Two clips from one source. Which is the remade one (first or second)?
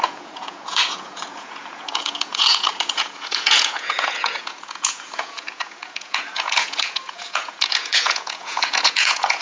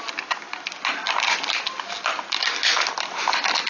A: first